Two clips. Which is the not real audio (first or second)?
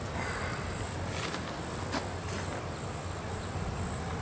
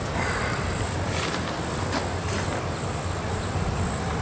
second